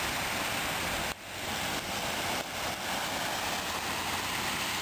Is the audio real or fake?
real